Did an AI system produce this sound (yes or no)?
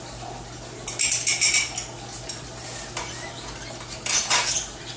no